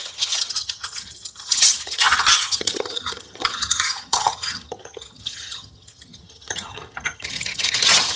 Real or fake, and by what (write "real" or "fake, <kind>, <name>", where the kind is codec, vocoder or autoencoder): fake, vocoder, HiFi-GAN